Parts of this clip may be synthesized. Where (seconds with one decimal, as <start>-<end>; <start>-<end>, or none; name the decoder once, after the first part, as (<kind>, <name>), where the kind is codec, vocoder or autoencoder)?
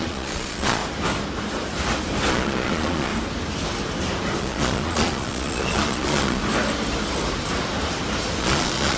0.0-0.8 (vocoder, Vocos); 2.3-3.1; 4.4-6.4; 8.4-9.0